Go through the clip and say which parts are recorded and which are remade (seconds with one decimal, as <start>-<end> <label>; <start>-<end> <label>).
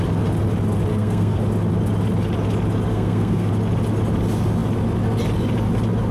0.0-0.9 recorded; 0.9-1.4 remade; 1.4-2.9 recorded; 2.9-3.5 remade; 3.5-6.1 recorded